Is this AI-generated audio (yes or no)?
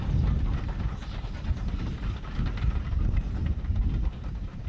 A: no